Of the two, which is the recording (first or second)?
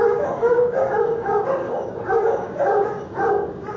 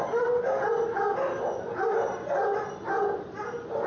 second